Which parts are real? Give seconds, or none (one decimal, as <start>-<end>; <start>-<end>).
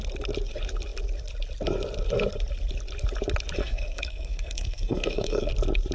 0.0-3.6; 5.5-5.9